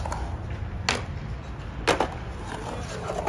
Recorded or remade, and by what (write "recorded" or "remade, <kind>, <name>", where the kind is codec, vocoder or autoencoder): recorded